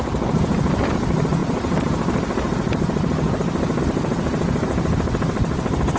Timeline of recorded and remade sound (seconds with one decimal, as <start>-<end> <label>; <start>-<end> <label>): 0.0-6.0 recorded